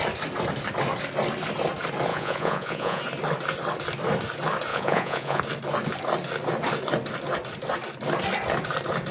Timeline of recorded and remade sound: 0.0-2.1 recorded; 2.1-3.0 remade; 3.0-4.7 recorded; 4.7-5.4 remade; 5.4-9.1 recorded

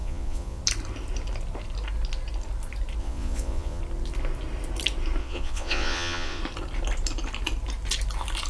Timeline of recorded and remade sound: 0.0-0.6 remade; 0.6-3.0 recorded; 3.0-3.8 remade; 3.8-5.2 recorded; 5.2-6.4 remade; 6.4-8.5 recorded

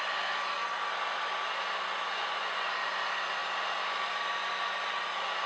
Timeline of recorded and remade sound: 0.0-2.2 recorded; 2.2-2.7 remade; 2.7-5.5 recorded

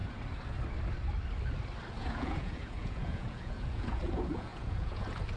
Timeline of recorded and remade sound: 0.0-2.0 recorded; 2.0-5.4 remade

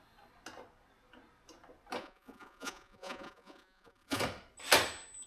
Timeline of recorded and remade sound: 0.0-2.0 recorded; 2.0-4.2 remade; 4.2-5.3 recorded